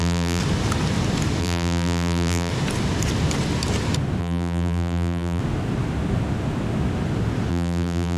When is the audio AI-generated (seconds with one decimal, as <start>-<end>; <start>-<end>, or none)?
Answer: 0.0-0.4; 1.4-2.5; 4.2-5.4; 7.5-8.2